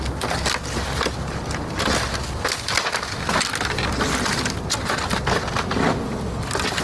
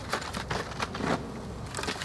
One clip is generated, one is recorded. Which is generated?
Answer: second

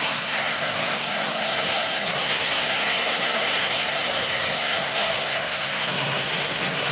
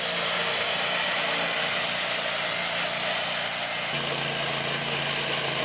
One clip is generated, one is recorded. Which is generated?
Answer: first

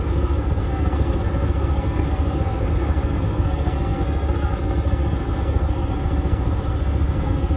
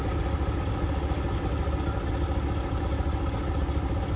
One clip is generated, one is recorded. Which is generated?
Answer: first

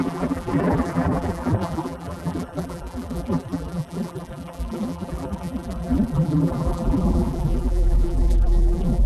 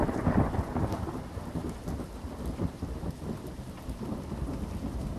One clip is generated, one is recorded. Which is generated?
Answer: first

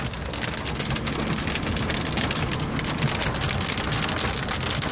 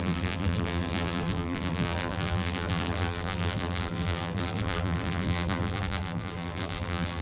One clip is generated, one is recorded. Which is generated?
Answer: second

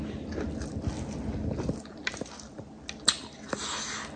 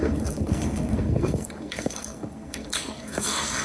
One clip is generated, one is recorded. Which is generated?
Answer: second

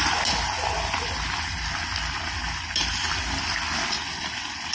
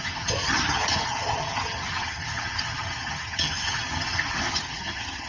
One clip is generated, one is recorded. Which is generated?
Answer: second